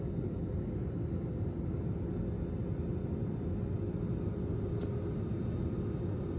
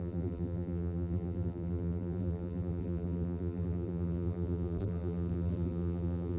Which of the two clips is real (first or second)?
first